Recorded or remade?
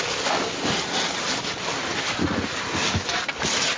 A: recorded